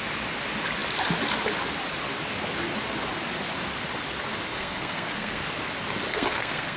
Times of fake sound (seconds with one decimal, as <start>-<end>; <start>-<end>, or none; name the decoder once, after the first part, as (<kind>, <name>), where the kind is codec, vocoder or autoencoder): 4.5-5.4 (codec, SNAC); 6.1-6.8